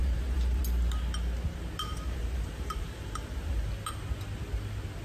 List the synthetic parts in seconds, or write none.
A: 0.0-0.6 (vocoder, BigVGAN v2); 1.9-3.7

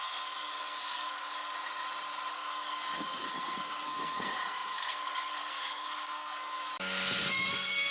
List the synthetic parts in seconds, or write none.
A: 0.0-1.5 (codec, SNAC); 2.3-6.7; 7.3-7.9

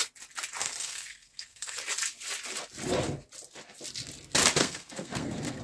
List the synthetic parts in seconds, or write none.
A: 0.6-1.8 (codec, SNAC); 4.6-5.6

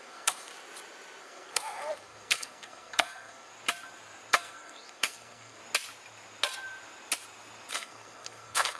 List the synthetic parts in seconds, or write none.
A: 0.0-0.5 (codec, SNAC); 1.2-3.5; 4.3-5.6; 7.7-8.8